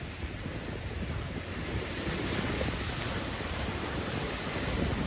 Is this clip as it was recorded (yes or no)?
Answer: yes